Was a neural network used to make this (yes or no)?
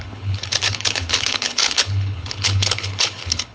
yes